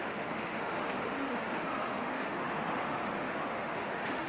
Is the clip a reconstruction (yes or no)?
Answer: yes